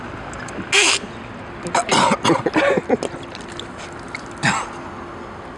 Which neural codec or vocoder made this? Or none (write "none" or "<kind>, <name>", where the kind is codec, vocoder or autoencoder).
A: none